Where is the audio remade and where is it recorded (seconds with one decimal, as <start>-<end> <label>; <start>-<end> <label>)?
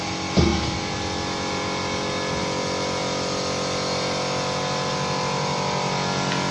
0.0-6.5 recorded